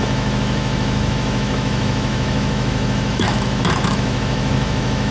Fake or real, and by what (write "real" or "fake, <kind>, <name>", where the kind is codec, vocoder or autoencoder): fake, autoencoder, DAC-VAE